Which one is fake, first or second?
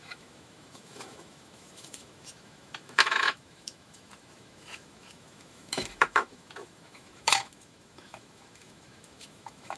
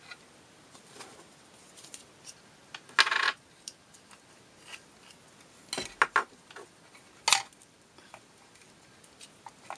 first